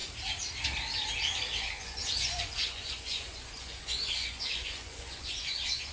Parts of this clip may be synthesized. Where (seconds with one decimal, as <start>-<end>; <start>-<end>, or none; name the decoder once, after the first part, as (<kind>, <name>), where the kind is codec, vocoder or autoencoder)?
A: 1.6-5.9 (vocoder, Vocos)